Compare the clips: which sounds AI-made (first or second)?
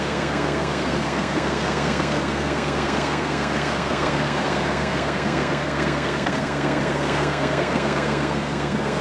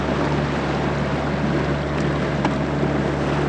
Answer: first